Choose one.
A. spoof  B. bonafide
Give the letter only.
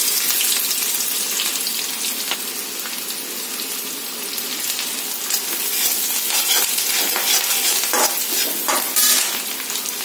B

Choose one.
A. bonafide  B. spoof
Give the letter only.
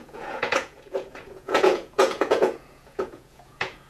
B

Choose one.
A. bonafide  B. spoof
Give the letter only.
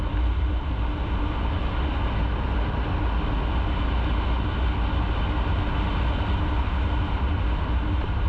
A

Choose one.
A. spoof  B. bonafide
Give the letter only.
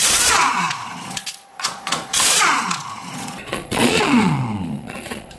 A